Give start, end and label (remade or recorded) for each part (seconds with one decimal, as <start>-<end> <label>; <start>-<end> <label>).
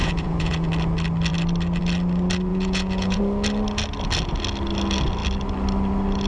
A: 0.0-0.7 remade; 0.7-2.5 recorded; 2.5-3.2 remade; 3.2-6.3 recorded